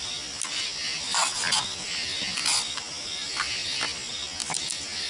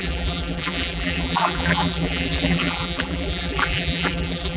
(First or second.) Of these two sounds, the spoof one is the second